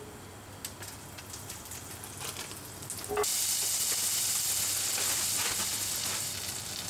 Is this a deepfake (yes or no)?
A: no